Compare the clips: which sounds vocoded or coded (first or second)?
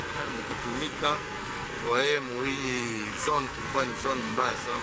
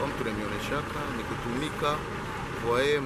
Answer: first